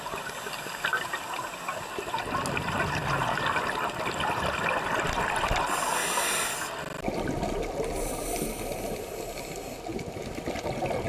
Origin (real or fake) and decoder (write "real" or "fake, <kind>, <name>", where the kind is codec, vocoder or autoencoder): real